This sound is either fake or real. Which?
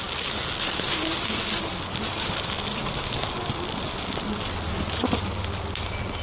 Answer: real